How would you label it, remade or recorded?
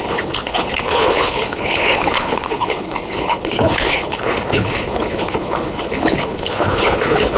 remade